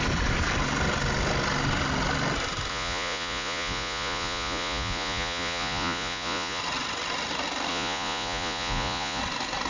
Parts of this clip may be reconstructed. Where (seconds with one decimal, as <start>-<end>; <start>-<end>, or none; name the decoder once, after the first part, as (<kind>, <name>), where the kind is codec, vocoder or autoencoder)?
2.7-6.6 (vocoder, Vocos); 7.7-9.2